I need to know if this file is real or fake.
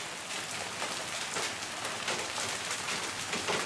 real